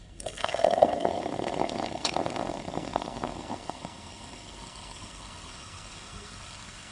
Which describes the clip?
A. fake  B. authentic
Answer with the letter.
A